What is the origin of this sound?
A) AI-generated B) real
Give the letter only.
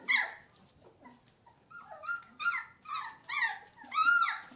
B